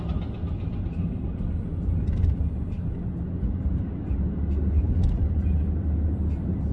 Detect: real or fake real